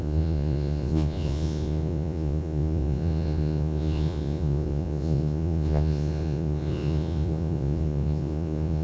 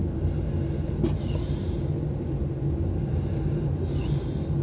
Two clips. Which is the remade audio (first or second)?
first